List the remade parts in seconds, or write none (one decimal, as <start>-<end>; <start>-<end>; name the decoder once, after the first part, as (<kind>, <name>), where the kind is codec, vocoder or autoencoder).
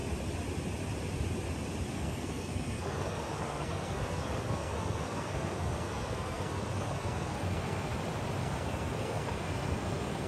1.9-7.9 (codec, SNAC); 8.4-10.3